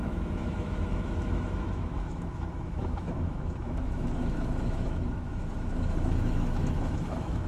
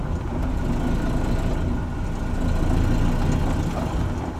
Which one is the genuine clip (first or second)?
second